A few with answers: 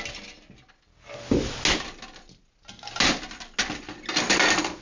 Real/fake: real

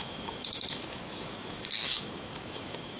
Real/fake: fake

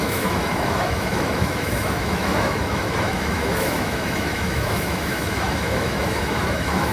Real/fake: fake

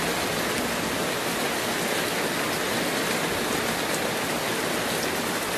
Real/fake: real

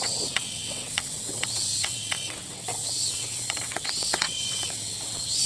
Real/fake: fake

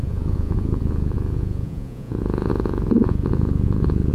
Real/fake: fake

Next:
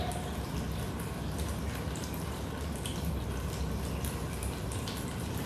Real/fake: real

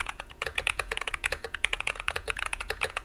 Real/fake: fake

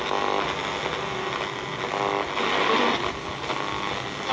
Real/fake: real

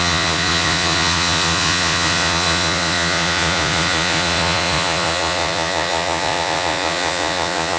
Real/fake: fake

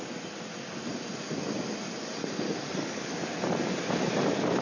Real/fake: real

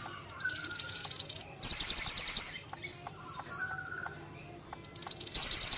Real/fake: real